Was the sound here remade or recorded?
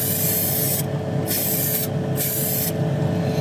recorded